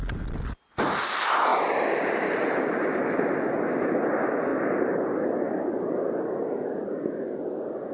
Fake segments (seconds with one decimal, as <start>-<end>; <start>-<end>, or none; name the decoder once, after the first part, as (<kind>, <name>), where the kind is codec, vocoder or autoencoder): none